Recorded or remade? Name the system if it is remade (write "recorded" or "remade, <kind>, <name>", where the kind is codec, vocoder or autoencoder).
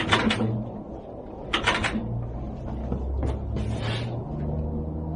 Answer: recorded